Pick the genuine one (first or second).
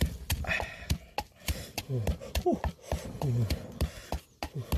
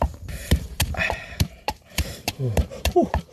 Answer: first